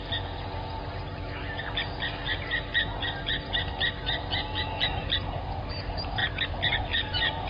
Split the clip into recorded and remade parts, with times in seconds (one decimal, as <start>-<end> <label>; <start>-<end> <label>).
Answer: 0.0-7.5 recorded